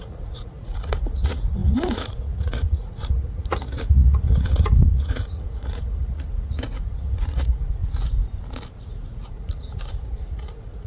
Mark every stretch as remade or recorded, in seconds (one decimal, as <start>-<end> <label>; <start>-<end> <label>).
0.0-7.8 remade; 7.8-8.9 recorded; 8.9-10.9 remade